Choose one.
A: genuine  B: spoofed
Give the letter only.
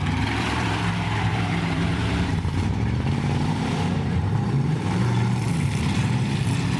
B